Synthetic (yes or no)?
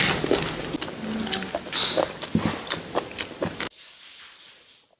no